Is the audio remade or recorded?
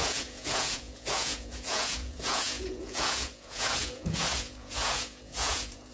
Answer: remade